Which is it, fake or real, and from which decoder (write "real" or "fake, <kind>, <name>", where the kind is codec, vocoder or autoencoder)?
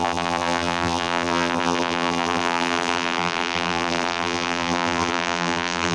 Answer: fake, vocoder, BigVGAN v2